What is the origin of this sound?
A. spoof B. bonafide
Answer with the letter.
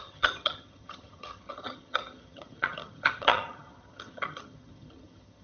A